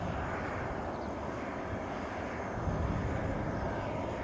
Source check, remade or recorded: recorded